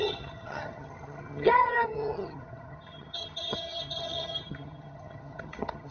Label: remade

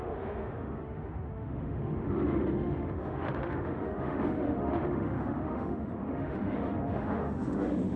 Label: remade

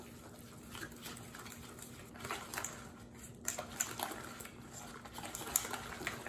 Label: recorded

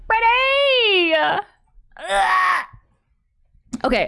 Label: recorded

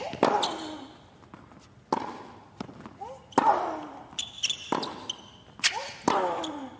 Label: recorded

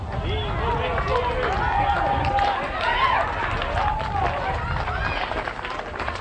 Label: recorded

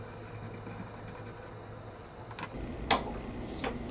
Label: recorded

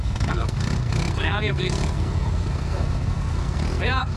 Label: remade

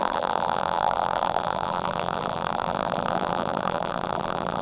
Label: remade